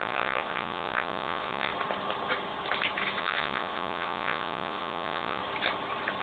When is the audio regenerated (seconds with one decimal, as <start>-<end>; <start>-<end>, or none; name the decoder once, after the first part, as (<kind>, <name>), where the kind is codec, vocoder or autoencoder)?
0.0-1.7 (vocoder, Vocos); 3.2-5.4